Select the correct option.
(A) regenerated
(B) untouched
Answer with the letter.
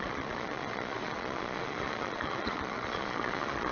A